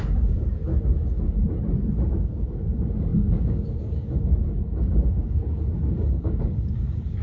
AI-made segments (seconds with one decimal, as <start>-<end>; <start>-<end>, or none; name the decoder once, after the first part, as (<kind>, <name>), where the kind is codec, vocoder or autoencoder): 0.0-0.7 (codec, DAC); 2.1-7.2